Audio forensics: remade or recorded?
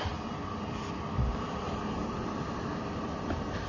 recorded